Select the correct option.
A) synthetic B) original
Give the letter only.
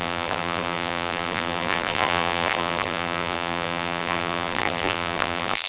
A